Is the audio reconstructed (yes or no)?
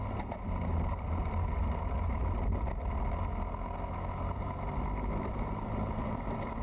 no